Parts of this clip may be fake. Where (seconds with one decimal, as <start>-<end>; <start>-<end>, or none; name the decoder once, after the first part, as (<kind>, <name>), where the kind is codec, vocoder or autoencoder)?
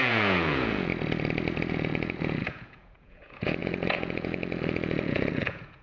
0.0-0.9 (vocoder, Vocos); 1.7-5.8